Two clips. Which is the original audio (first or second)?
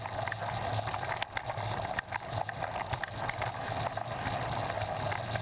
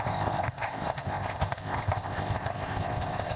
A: first